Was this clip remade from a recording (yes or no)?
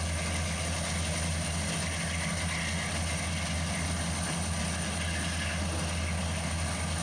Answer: no